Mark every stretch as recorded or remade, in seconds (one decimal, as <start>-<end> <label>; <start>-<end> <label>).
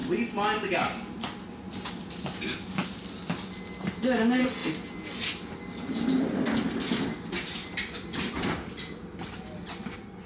0.0-7.6 recorded; 7.6-9.3 remade; 9.3-10.3 recorded